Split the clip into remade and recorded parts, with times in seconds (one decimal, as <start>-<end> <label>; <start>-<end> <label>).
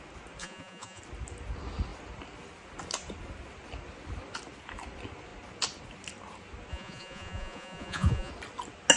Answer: 0.0-0.4 recorded; 0.4-1.0 remade; 1.0-6.7 recorded; 6.7-8.3 remade; 8.3-9.0 recorded